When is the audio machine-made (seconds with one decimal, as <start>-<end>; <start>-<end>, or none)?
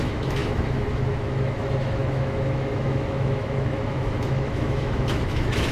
0.0-5.7